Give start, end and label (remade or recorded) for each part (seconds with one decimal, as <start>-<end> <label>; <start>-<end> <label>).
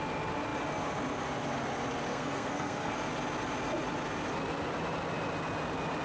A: 0.0-2.1 recorded; 2.1-2.9 remade; 2.9-6.0 recorded